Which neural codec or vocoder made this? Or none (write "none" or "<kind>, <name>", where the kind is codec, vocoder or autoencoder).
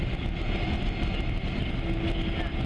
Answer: none